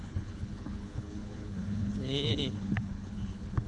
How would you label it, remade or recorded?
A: remade